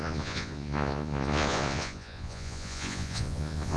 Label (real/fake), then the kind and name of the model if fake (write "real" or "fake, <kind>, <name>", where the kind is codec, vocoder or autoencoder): fake, vocoder, Vocos